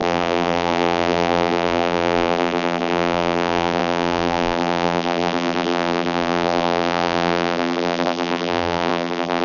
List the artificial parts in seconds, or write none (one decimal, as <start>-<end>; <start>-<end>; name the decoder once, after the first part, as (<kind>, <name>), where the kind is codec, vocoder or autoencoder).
0.0-9.4 (vocoder, BigVGAN v2)